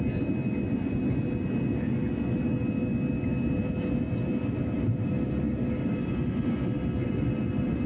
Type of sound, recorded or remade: recorded